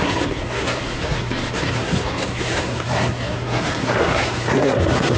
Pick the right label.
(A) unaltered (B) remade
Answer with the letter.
B